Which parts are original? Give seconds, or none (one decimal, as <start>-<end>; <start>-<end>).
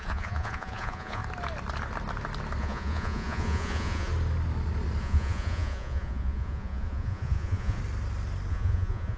1.2-2.6; 4.1-5.0; 7.8-8.5